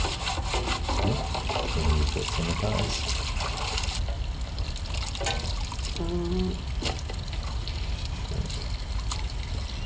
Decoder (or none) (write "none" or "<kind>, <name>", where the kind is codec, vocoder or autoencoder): none